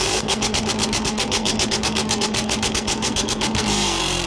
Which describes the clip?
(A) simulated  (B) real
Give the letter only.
A